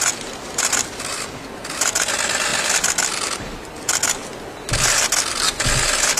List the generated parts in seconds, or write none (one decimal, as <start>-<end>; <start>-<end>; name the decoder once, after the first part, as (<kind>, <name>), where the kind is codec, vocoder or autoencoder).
none